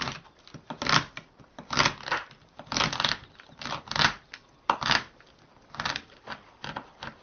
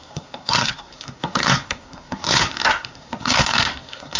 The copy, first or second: second